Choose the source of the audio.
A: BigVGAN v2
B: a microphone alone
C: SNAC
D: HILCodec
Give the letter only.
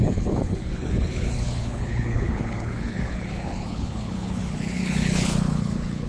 D